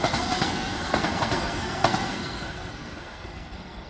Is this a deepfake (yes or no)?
yes